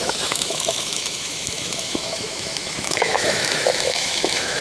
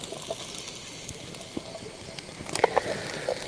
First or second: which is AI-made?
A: first